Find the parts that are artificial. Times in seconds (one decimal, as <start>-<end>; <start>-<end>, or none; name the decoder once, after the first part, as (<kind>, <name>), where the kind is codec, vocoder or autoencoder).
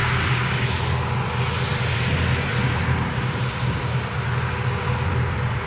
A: none